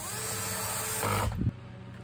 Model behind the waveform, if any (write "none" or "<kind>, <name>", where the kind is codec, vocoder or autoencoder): none